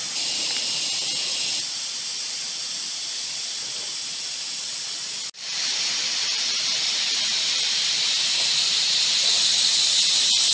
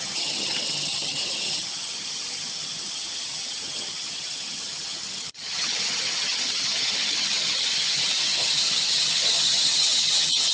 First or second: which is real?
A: first